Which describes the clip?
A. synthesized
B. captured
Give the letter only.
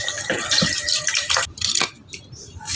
A